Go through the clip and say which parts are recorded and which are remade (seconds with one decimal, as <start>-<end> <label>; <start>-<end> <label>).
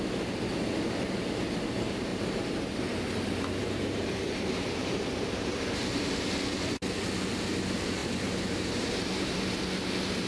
0.0-2.1 recorded; 2.1-3.0 remade; 3.0-3.6 recorded; 3.6-6.1 remade; 6.1-8.0 recorded; 8.0-9.6 remade; 9.6-10.3 recorded